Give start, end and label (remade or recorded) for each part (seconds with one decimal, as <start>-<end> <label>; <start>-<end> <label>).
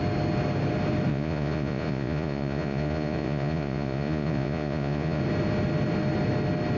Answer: 0.0-1.1 recorded; 1.1-5.2 remade; 5.2-6.8 recorded